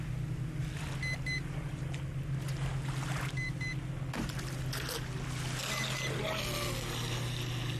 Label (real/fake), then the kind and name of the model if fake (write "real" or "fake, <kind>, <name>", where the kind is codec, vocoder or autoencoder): real